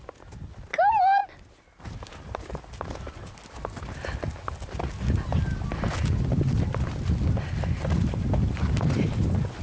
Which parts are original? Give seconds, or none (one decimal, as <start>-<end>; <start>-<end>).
0.0-9.6